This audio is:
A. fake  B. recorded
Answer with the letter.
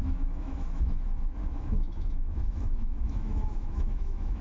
A